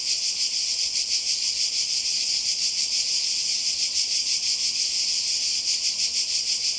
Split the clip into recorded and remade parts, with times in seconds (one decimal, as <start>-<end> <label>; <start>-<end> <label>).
0.0-6.8 recorded